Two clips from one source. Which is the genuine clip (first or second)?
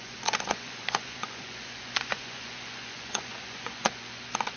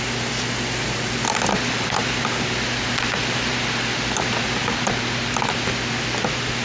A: second